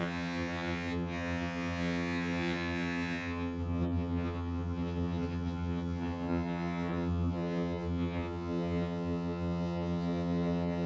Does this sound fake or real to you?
fake